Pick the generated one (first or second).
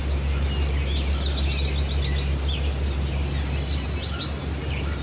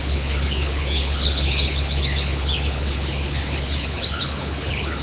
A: second